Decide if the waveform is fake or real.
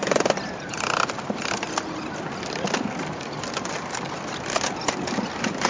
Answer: fake